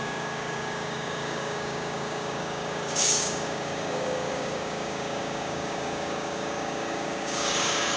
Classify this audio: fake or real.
fake